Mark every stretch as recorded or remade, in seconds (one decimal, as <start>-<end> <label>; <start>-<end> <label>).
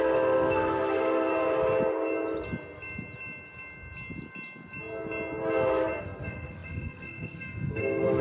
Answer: 0.0-1.3 remade; 1.3-6.0 recorded; 6.0-8.2 remade